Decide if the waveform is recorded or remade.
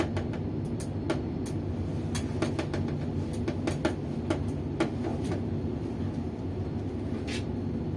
recorded